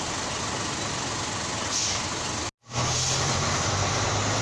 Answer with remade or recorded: recorded